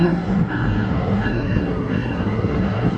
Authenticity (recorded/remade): remade